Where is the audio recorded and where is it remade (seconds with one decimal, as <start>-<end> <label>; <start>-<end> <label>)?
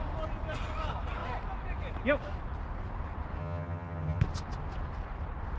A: 0.0-3.4 recorded; 3.4-4.2 remade; 4.2-5.6 recorded